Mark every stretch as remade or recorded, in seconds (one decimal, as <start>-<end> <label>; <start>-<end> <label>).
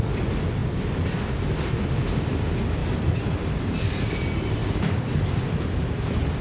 0.0-6.4 recorded